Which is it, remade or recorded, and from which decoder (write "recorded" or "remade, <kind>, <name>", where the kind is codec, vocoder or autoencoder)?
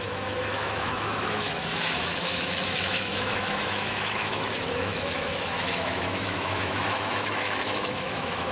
remade, autoencoder, DAC-VAE